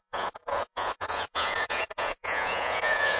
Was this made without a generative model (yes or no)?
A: no